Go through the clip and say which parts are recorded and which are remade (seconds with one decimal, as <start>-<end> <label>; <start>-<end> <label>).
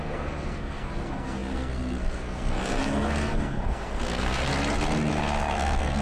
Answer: 0.0-4.5 remade; 4.5-5.1 recorded; 5.1-6.0 remade